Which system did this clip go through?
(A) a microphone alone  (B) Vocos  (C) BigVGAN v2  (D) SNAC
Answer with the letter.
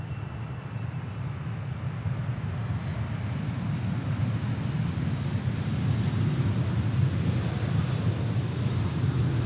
A